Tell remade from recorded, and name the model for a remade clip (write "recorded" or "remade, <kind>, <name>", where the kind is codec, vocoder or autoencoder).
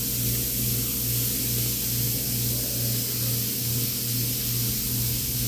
recorded